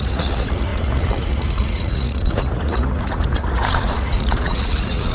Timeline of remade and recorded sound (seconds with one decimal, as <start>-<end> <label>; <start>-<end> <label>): 0.0-5.1 remade